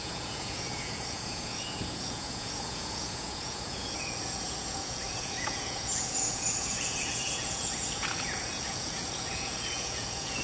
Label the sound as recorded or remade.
remade